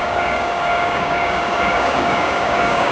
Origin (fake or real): fake